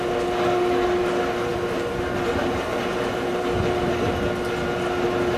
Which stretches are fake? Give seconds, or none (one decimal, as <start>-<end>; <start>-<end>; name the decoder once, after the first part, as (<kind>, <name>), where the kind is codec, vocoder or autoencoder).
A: 1.5-3.9 (vocoder, BigVGAN v2)